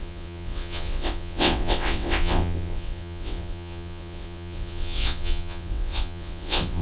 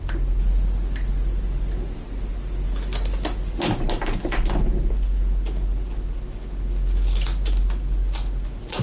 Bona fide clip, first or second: second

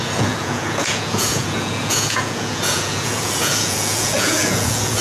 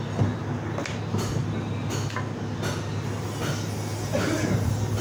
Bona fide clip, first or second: second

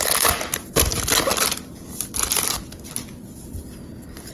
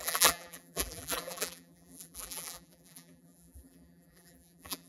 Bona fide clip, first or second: first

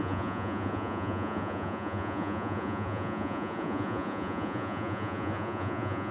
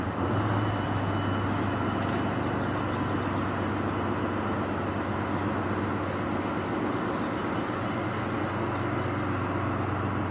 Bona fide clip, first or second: second